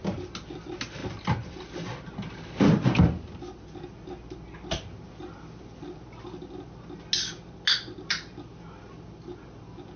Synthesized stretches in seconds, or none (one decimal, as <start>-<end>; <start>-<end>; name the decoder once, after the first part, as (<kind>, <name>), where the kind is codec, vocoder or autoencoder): none